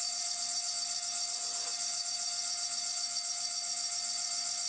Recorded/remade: recorded